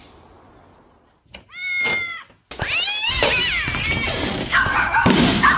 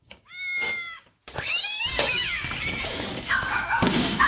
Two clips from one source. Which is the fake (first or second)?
second